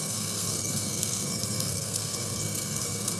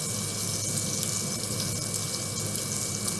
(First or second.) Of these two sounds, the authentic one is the second